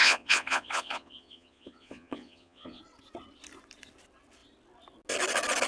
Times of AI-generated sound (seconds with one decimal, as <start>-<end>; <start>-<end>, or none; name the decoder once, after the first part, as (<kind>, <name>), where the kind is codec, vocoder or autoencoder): 0.0-2.8 (vocoder, Vocos)